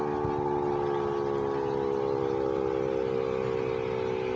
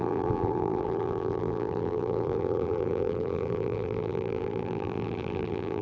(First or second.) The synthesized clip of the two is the second